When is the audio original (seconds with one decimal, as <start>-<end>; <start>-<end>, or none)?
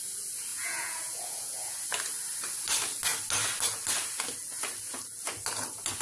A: 0.0-0.5; 1.7-6.0